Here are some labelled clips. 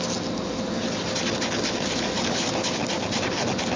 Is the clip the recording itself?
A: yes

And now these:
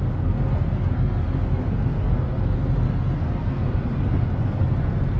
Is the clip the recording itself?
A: no